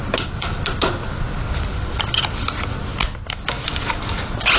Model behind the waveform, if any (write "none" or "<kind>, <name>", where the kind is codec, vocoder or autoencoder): none